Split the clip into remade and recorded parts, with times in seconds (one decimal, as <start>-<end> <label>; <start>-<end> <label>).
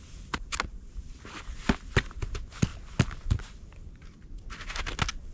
0.0-5.3 recorded